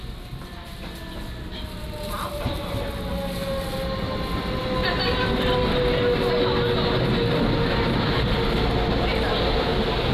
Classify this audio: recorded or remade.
recorded